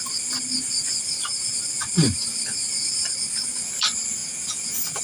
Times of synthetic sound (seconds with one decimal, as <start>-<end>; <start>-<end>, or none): 4.2-5.0